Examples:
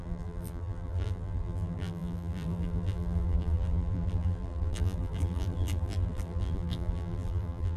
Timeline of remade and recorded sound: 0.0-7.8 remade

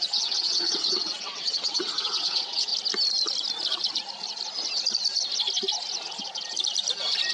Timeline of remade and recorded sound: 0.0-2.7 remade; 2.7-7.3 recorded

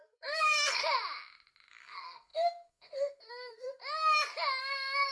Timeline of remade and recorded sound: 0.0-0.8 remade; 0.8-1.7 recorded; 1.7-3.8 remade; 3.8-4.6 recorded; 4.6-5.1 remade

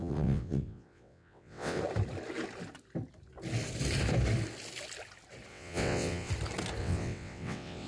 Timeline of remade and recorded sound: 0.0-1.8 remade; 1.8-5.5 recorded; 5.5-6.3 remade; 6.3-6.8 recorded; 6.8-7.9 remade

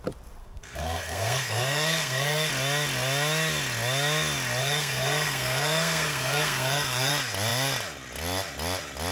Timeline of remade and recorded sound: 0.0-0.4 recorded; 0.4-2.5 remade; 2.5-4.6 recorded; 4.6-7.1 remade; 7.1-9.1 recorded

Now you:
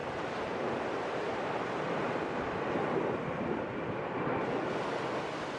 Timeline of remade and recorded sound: 0.0-3.4 remade; 3.4-5.6 recorded

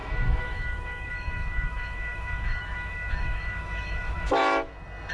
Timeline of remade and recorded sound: 0.0-4.4 remade; 4.4-5.1 recorded

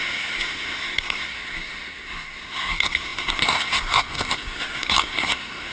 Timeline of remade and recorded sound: 0.0-5.7 remade